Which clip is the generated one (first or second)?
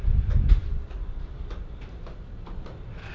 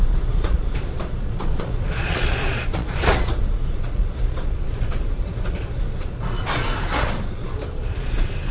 second